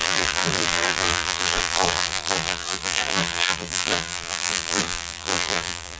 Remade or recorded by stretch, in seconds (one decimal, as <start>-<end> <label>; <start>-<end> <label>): 0.0-6.0 remade